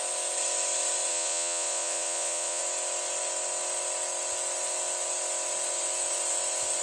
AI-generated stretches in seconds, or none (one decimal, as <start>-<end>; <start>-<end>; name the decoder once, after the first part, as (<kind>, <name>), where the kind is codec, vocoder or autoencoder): 1.1-2.6 (vocoder, Vocos)